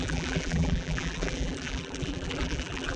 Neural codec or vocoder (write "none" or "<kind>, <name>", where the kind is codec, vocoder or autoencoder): vocoder, BigVGAN v2